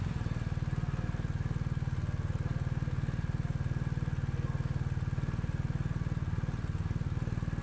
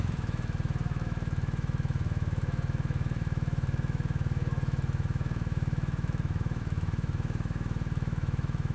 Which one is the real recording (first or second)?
first